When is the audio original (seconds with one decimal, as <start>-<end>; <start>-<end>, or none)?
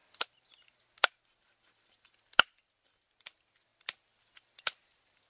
0.0-5.3